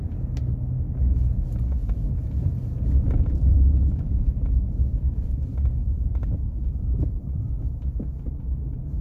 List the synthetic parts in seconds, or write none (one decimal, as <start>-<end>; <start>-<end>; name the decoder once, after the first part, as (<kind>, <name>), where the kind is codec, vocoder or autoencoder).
1.8-4.3 (vocoder, BigVGAN v2); 4.9-9.0